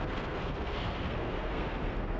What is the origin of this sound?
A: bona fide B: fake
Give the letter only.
B